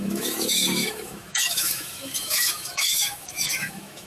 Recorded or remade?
remade